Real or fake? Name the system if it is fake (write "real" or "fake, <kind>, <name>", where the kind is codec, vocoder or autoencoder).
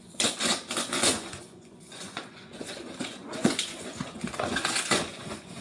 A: fake, vocoder, Vocos